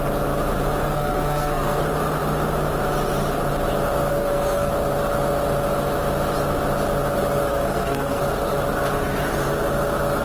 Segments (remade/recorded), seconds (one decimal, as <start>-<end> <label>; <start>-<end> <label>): 0.0-0.8 recorded; 0.8-1.8 remade; 1.8-4.1 recorded; 4.1-4.7 remade; 4.7-7.5 recorded; 7.5-8.2 remade; 8.2-10.2 recorded